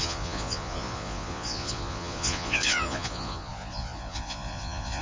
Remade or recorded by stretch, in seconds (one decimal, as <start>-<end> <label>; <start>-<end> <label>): 0.0-5.0 remade

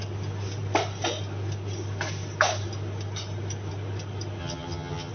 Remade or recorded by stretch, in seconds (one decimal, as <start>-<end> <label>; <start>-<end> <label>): 0.0-4.4 recorded; 4.4-5.1 remade

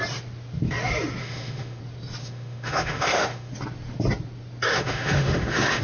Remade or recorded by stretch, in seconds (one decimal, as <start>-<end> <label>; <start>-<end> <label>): 0.0-1.2 recorded; 1.2-1.8 remade; 1.8-2.2 recorded; 2.2-3.5 remade; 3.5-4.7 recorded; 4.7-5.8 remade

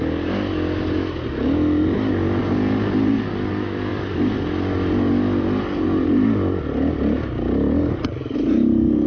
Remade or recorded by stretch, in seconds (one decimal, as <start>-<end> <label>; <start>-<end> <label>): 0.0-9.1 recorded

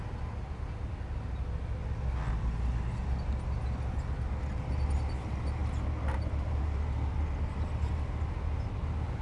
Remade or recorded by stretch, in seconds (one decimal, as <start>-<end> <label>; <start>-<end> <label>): 0.0-9.2 recorded

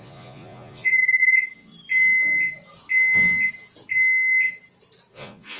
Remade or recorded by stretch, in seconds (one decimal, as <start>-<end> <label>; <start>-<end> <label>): 0.0-1.7 remade; 1.7-5.1 recorded; 5.1-5.6 remade

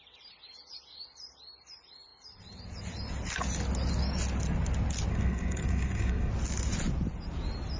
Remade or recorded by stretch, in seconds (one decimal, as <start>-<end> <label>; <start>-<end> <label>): 0.0-5.1 recorded; 5.1-6.3 remade; 6.3-7.8 recorded

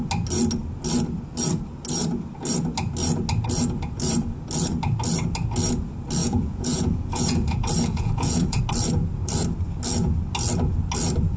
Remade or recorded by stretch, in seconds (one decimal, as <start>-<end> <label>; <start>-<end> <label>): 0.0-6.2 recorded; 6.2-8.6 remade; 8.6-11.4 recorded